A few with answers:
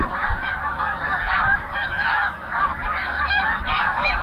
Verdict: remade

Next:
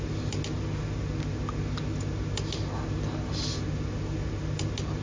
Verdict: recorded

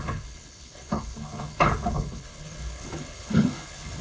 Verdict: remade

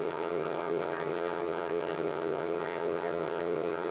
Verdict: remade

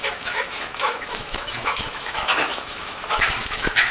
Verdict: remade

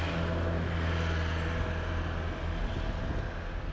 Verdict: recorded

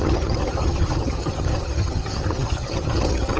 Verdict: remade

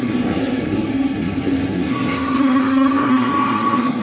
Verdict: remade